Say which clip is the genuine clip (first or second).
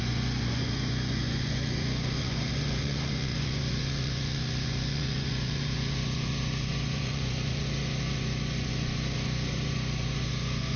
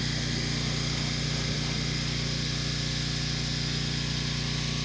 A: second